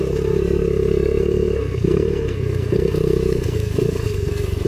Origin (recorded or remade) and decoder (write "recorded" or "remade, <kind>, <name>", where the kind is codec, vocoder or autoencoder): remade, codec, SNAC